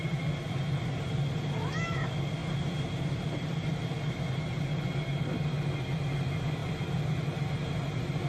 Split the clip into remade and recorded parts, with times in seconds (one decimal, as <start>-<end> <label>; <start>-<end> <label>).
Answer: 0.0-8.3 recorded